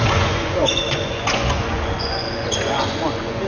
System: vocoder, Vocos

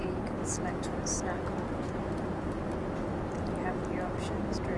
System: none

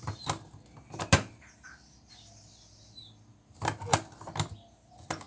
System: none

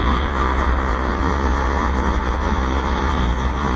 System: vocoder, Vocos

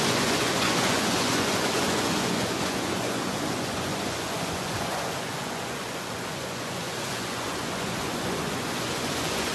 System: vocoder, Vocos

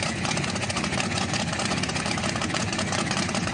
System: vocoder, Vocos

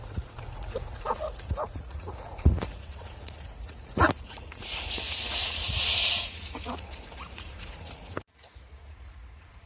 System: vocoder, Vocos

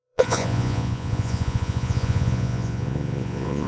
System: vocoder, Vocos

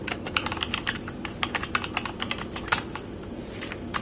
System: none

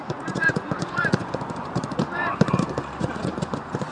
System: vocoder, Vocos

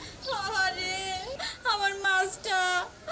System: none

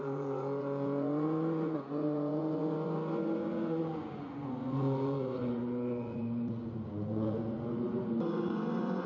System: vocoder, Vocos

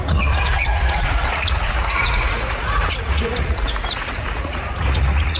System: vocoder, Vocos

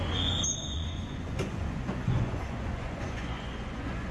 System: vocoder, Vocos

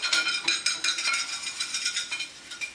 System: none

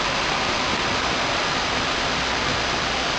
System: none